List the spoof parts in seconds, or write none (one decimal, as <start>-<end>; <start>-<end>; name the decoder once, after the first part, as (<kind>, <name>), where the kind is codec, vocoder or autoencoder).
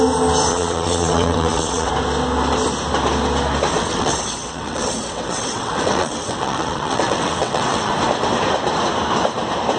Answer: 0.5-1.9 (vocoder, WaveNeXt); 3.7-7.9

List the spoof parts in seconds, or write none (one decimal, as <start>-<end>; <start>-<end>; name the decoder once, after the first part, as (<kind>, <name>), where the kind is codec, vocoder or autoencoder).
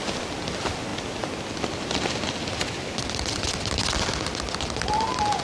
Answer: none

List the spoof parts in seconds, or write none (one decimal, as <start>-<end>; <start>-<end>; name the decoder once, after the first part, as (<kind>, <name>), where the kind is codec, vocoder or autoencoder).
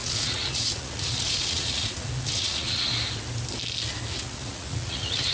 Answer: 0.0-2.9 (vocoder, Vocos); 4.1-5.3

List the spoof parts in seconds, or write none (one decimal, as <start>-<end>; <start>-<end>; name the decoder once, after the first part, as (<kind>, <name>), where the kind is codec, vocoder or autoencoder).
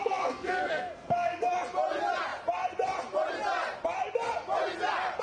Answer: 0.0-1.5 (codec, SNAC)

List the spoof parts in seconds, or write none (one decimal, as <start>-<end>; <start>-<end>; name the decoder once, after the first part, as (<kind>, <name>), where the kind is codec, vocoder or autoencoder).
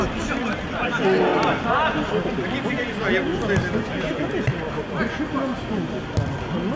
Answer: none